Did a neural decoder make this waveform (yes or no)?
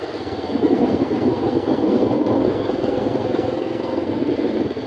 yes